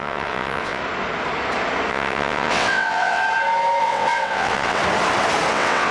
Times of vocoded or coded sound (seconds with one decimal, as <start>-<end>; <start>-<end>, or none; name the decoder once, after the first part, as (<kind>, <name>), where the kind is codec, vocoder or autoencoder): 0.0-0.8 (vocoder, WaveNeXt); 1.9-3.2; 3.8-4.8; 5.5-5.9